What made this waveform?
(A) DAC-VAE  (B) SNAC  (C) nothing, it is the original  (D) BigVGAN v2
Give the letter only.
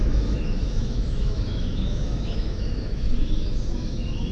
A